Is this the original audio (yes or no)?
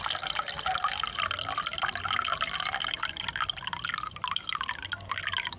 yes